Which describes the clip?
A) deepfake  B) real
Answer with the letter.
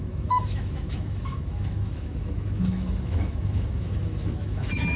A